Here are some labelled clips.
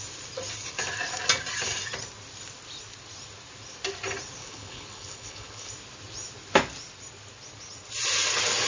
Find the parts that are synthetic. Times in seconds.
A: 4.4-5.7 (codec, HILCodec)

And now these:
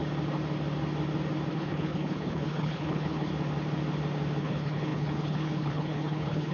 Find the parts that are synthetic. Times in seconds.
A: 1.5-3.3 (codec, HILCodec); 4.4-6.5

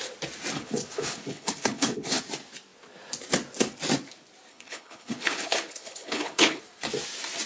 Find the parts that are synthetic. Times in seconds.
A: 0.6-2.2 (codec, HILCodec); 4.5-6.6

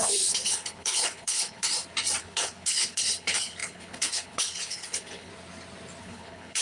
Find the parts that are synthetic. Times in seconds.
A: 0.0-1.7 (codec, HILCodec); 2.2-5.3; 6.0-6.6

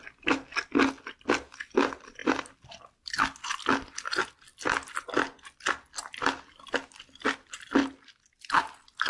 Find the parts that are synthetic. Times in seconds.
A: none

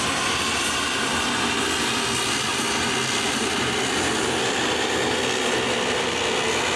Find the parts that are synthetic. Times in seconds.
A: none

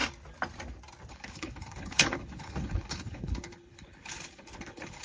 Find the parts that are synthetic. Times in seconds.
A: 1.1-5.0 (codec, HILCodec)